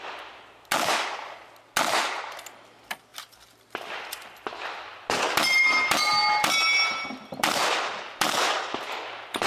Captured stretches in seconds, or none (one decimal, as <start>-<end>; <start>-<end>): 0.0-9.5